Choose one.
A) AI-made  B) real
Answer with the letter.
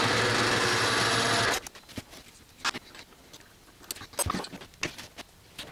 B